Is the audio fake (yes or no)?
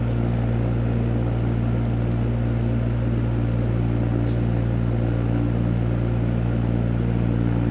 no